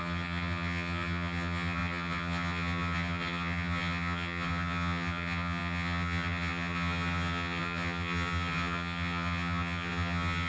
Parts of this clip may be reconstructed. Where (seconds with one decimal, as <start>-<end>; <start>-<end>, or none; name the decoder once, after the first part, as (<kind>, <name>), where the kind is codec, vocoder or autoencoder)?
0.0-10.5 (vocoder, HiFi-GAN)

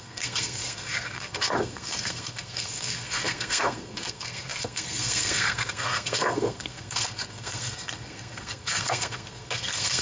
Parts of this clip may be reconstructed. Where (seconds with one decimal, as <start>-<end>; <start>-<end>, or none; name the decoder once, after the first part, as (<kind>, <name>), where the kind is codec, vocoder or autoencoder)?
0.0-10.0 (codec, SNAC)

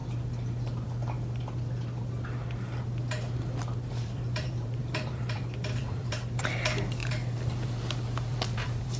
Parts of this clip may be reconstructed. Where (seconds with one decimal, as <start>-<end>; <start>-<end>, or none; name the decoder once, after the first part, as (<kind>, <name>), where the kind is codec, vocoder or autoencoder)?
3.9-9.0 (vocoder, BigVGAN v2)